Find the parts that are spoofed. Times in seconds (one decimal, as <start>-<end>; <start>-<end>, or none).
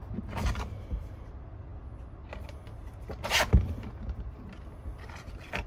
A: none